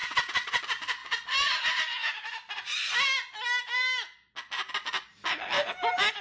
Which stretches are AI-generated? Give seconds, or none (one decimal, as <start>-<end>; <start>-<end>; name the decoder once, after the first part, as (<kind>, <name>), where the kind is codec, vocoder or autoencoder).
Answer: 0.0-0.6 (vocoder, WaveNeXt)